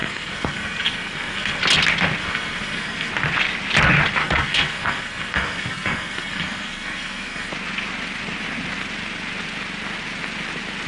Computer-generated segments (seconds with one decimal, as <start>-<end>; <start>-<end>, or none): 0.0-1.6; 2.2-3.1; 4.2-7.5